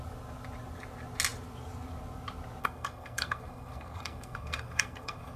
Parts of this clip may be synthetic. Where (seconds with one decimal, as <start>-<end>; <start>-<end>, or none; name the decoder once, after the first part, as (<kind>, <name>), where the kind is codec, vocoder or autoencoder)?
2.6-5.4 (codec, SNAC)